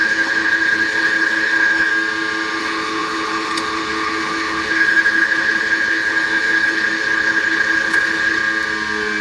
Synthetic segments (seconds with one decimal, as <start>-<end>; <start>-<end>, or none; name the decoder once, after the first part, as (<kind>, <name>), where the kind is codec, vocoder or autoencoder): 0.0-1.9 (codec, HILCodec); 2.6-8.4